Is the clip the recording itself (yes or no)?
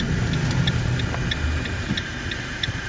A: yes